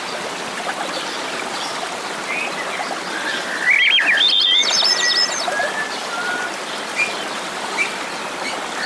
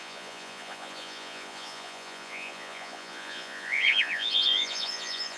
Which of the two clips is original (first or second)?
first